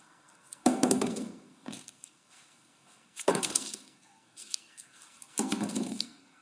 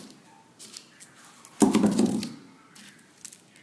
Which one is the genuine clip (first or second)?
second